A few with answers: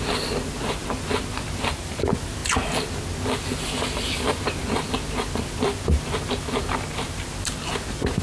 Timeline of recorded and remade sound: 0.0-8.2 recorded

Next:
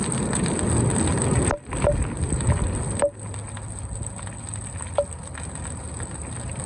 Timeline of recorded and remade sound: 0.0-6.7 recorded

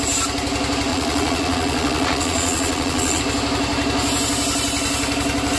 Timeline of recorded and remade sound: 0.0-0.9 recorded; 0.9-3.2 remade; 3.2-5.6 recorded

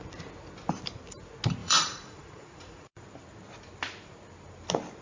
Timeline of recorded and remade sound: 0.0-1.6 recorded; 1.6-3.0 remade; 3.0-5.0 recorded

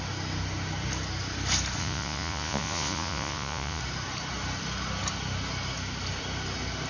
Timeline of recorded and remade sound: 0.0-1.8 recorded; 1.8-3.8 remade; 3.8-6.9 recorded

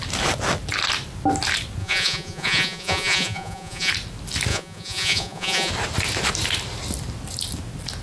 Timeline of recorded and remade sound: 0.0-1.8 recorded; 1.8-3.9 remade; 3.9-4.5 recorded; 4.5-5.7 remade; 5.7-8.0 recorded